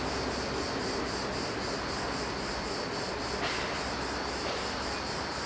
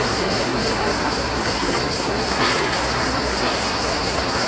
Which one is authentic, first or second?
first